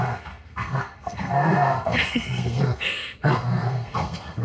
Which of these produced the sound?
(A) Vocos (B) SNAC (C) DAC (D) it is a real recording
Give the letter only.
B